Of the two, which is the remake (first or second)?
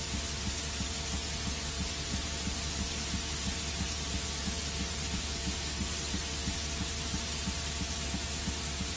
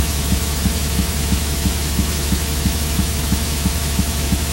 second